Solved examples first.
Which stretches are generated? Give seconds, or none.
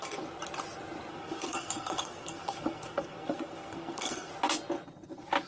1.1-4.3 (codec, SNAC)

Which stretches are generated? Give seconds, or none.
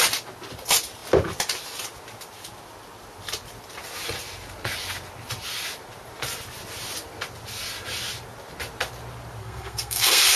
9.4-10.4 (codec, SNAC)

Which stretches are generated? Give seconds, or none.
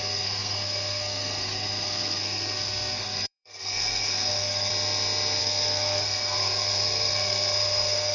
0.0-4.7 (codec, SNAC); 5.4-8.1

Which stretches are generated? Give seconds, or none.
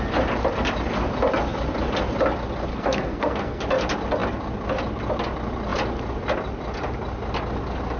2.7-3.6 (codec, SNAC)